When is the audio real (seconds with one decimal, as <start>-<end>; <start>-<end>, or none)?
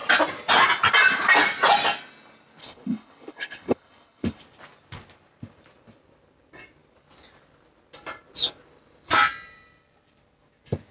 0.0-2.6; 4.4-10.9